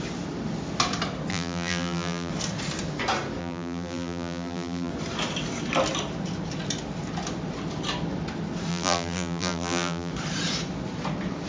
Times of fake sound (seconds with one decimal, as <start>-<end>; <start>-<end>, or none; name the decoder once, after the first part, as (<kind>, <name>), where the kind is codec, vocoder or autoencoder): 1.3-2.3 (vocoder, BigVGAN v2); 3.4-4.9; 8.7-10.1